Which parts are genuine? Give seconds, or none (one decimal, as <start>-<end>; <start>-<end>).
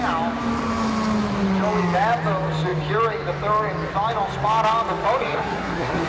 0.0-5.2